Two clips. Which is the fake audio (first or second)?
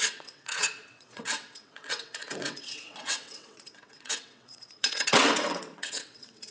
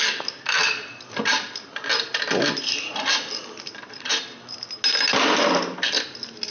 first